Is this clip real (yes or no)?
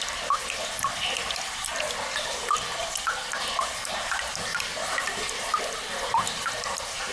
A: yes